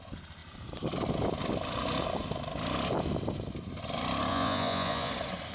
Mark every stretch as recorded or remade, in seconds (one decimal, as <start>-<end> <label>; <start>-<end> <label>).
0.0-4.3 recorded; 4.3-5.1 remade; 5.1-5.5 recorded